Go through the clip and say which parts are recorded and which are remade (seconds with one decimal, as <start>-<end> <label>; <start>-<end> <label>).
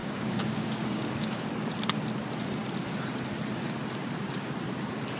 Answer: 0.0-1.5 remade; 1.5-5.2 recorded